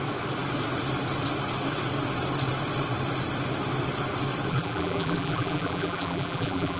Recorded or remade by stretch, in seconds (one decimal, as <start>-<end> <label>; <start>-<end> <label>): 0.0-4.5 recorded; 4.5-6.8 remade